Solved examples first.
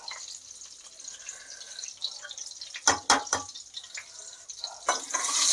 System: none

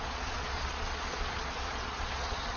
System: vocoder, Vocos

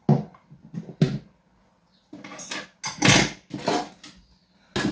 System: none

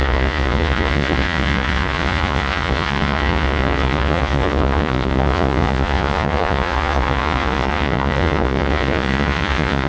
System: vocoder, Vocos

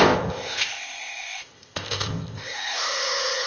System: codec, ZipCodec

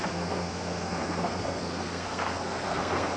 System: codec, SNAC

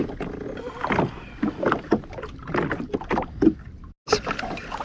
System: none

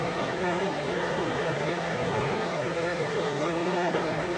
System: codec, SNAC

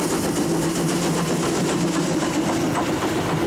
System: none